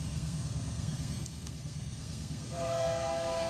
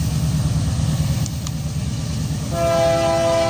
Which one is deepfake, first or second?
first